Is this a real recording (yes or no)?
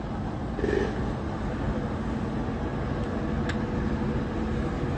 yes